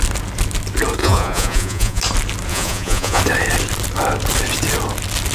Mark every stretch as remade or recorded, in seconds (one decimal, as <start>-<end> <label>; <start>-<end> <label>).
0.0-1.0 recorded; 1.0-2.0 remade; 2.0-2.5 recorded; 2.5-3.2 remade; 3.2-5.3 recorded

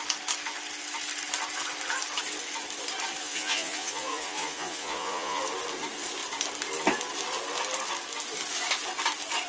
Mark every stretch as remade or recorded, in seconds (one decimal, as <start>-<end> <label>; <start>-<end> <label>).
0.0-3.2 recorded; 3.2-5.4 remade; 5.4-9.5 recorded

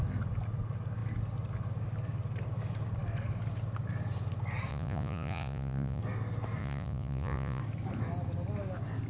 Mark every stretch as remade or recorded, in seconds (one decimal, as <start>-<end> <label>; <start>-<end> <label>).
0.0-4.7 recorded; 4.7-6.0 remade; 6.0-6.6 recorded; 6.6-7.6 remade; 7.6-9.1 recorded

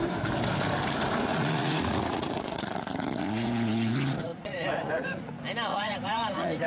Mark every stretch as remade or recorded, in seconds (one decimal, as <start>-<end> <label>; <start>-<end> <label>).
0.0-1.3 recorded; 1.3-5.3 remade; 5.3-5.7 recorded; 5.7-6.7 remade

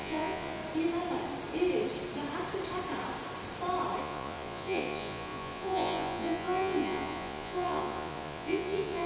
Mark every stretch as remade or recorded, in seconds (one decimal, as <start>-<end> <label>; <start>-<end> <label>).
0.0-0.6 remade; 0.6-4.0 recorded; 4.0-9.1 remade

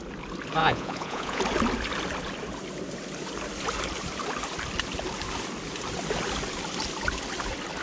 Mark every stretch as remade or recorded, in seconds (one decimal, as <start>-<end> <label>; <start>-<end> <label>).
0.0-0.6 recorded; 0.6-1.4 remade; 1.4-7.8 recorded